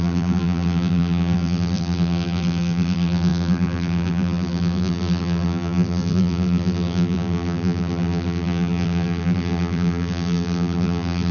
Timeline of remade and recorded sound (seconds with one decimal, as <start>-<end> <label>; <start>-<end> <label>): 0.0-11.3 remade